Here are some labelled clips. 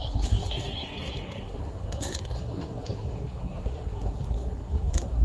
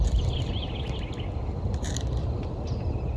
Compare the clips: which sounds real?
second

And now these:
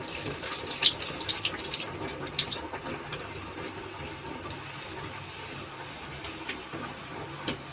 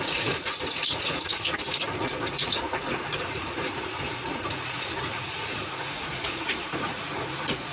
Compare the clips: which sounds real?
first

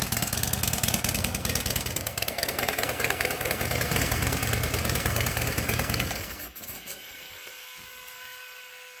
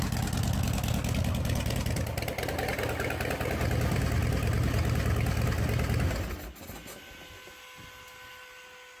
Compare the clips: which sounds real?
second